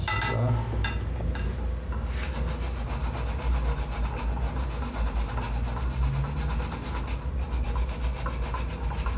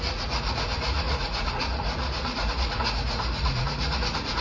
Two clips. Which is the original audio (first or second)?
first